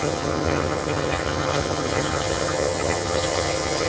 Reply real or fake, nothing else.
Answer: fake